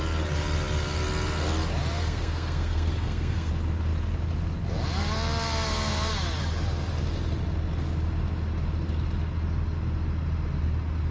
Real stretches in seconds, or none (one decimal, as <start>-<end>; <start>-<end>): 0.0-2.0; 3.5-11.1